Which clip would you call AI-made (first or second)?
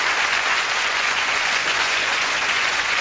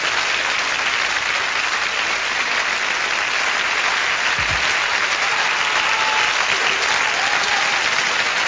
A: first